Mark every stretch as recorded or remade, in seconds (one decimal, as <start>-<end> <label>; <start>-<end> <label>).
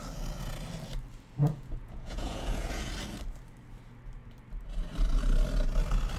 0.0-1.4 recorded; 1.4-2.9 remade; 2.9-6.2 recorded